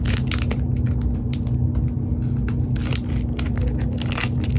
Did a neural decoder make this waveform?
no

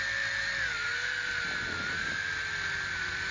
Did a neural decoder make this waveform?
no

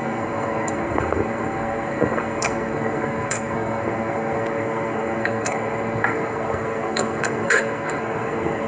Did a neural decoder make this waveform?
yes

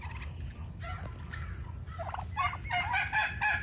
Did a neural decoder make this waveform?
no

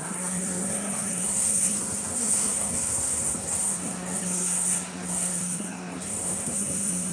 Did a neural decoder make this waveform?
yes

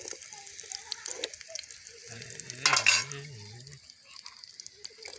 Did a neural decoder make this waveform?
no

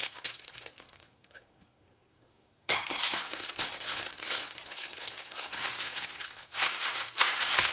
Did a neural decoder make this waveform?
yes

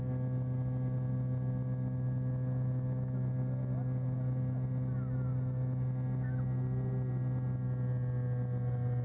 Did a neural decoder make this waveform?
no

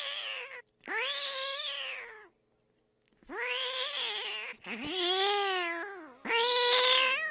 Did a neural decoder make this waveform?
no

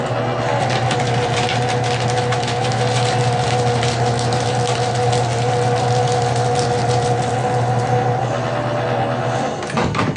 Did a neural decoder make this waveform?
no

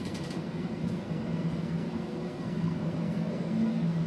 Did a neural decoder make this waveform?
yes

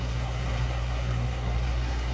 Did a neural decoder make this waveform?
yes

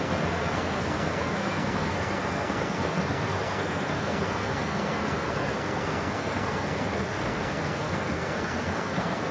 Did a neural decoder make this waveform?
yes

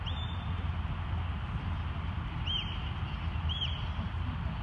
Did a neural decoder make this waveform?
no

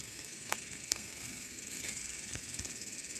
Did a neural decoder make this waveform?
yes